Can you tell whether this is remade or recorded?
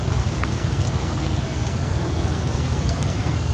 remade